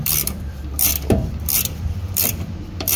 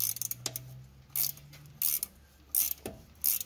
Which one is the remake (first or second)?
first